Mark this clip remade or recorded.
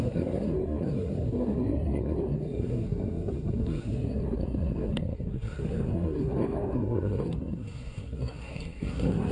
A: remade